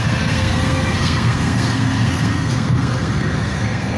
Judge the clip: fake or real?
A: fake